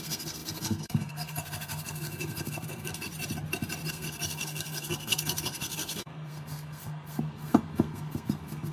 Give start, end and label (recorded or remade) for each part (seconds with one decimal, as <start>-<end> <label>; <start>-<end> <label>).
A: 0.0-3.1 remade; 3.1-3.9 recorded; 3.9-8.7 remade